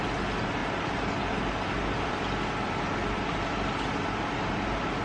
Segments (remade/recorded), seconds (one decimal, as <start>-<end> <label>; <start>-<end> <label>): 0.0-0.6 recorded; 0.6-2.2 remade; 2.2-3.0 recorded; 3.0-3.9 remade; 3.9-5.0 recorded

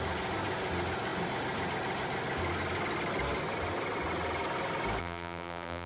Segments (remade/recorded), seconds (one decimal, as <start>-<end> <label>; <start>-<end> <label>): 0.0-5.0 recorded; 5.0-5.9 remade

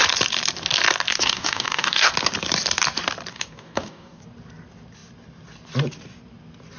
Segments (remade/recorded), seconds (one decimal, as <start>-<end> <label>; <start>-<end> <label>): 0.0-1.1 recorded; 1.1-2.1 remade; 2.1-3.3 recorded; 3.3-4.2 remade; 4.2-6.8 recorded

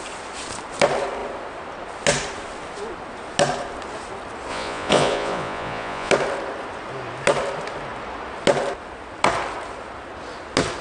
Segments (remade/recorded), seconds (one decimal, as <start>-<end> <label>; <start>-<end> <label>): 0.0-4.5 recorded; 4.5-6.1 remade; 6.1-10.8 recorded

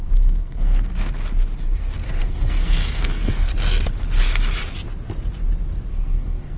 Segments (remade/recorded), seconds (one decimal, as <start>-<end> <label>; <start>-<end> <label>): 0.0-0.9 remade; 0.9-1.6 recorded; 1.6-3.5 remade; 3.5-5.9 recorded; 5.9-6.6 remade

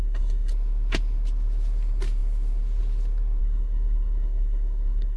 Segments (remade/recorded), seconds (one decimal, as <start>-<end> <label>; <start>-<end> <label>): 0.0-0.5 remade; 0.5-3.4 recorded; 3.4-5.2 remade

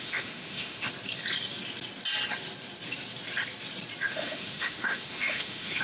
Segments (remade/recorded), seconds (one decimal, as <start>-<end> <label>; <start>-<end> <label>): 0.0-0.9 remade; 0.9-4.1 recorded; 4.1-5.8 remade

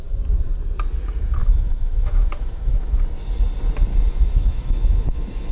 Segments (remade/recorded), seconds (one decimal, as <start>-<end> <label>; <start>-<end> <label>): 0.0-1.4 recorded; 1.4-3.0 remade; 3.0-3.9 recorded; 3.9-5.5 remade